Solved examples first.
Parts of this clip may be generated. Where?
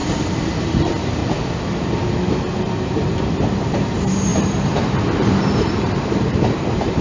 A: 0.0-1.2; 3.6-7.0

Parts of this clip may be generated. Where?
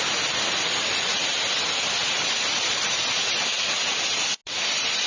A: none